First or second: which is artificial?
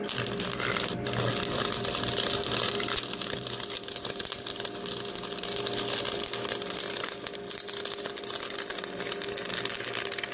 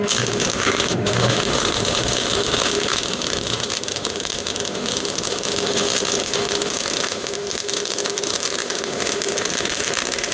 second